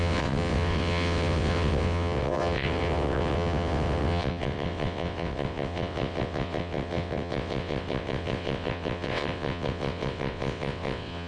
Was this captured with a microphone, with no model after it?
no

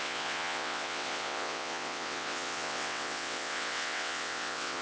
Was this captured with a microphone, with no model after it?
no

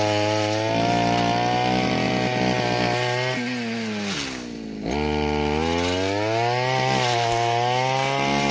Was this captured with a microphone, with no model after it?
yes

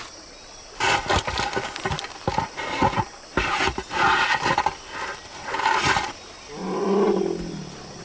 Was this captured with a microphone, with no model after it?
yes